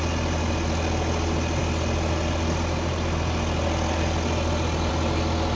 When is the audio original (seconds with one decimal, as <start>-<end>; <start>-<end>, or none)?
0.0-5.5